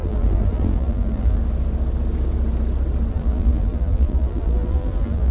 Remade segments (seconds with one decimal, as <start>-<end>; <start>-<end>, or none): 0.0-1.4; 3.1-5.3